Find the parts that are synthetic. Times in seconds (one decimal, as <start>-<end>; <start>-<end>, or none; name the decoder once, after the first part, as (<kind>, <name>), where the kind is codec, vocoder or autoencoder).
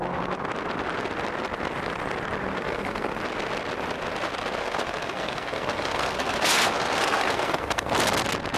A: 2.5-3.2 (codec, SNAC); 4.6-7.9